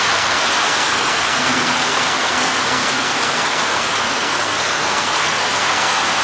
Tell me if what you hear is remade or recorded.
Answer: remade